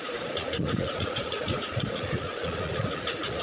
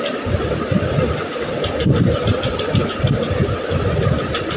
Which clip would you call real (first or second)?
second